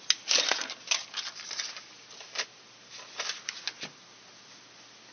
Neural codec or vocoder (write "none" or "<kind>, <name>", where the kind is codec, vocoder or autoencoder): none